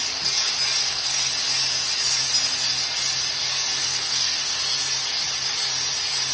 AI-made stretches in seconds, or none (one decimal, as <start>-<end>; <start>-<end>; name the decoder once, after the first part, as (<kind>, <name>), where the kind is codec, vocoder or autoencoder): 0.8-1.3 (codec, SNAC); 3.8-4.6